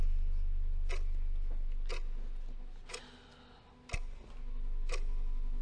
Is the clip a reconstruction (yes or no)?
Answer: no